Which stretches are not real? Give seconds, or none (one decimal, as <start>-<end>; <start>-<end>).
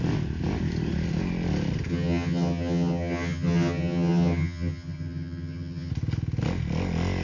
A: 1.9-5.9